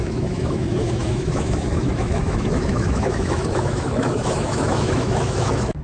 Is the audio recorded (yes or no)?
no